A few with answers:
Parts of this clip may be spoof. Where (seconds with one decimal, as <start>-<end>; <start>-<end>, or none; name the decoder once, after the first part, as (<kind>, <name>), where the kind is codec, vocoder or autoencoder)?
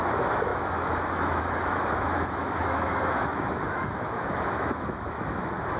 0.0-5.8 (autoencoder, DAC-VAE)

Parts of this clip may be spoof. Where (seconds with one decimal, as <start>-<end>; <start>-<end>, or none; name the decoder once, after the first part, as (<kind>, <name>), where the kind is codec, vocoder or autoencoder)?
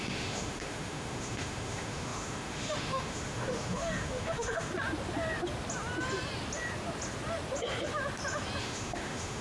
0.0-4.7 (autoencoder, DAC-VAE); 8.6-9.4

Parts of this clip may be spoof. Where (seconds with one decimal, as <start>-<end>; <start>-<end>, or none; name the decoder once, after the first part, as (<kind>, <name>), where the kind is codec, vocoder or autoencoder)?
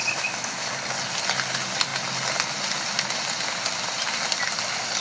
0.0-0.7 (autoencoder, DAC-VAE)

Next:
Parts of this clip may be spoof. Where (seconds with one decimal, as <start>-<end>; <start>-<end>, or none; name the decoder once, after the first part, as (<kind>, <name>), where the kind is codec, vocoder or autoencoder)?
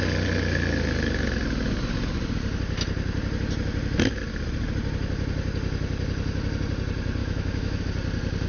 7.2-7.8 (autoencoder, DAC-VAE)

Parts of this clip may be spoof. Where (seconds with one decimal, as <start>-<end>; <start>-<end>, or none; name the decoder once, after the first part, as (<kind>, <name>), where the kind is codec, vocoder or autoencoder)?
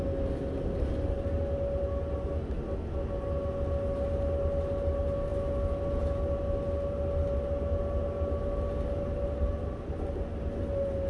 none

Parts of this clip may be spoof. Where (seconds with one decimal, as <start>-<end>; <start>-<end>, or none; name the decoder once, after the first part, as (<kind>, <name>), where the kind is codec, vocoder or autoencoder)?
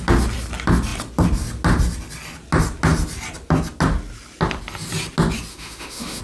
5.5-6.2 (autoencoder, DAC-VAE)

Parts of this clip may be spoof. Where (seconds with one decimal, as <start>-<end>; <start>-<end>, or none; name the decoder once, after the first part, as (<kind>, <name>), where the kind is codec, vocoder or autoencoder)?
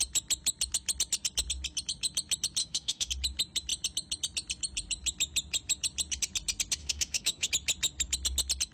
2.6-3.1 (autoencoder, DAC-VAE); 6.8-7.5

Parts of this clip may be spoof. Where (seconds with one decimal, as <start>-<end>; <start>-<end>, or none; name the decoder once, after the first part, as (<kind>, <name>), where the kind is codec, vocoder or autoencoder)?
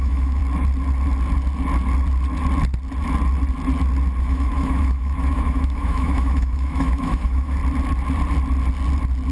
0.0-0.4 (autoencoder, DAC-VAE); 4.2-7.6